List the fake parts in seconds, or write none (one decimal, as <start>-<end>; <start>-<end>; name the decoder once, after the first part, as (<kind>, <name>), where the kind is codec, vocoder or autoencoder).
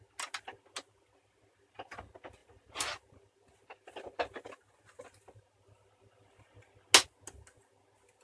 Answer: none